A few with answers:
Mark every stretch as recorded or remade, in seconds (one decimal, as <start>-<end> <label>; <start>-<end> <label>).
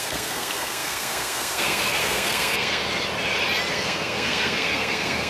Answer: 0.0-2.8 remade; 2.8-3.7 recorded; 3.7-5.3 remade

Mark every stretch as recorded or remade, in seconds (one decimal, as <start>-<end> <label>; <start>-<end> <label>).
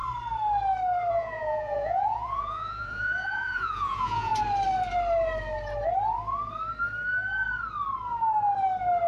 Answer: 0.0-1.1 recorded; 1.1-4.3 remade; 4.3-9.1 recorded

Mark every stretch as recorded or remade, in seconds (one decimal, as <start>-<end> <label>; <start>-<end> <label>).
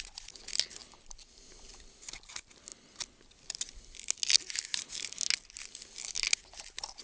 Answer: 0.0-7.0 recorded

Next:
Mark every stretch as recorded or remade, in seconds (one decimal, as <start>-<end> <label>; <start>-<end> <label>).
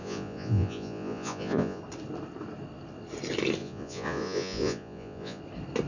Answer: 0.0-1.8 remade; 1.8-3.6 recorded; 3.6-5.4 remade; 5.4-5.9 recorded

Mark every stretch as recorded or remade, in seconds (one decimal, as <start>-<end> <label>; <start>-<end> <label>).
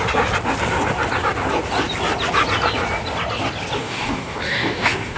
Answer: 0.0-3.8 recorded; 3.8-5.2 remade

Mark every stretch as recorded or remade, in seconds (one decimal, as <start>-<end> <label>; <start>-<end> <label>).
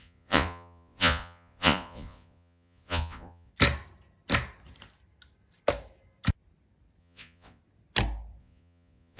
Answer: 0.0-3.5 remade; 3.5-7.0 recorded; 7.0-7.6 remade; 7.6-8.4 recorded; 8.4-9.2 remade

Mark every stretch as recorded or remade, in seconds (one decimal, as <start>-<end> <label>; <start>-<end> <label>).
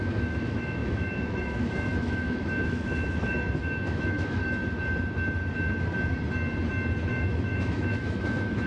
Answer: 0.0-4.4 remade; 4.4-7.1 recorded; 7.1-8.7 remade